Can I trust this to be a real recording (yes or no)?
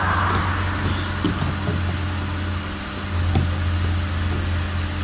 yes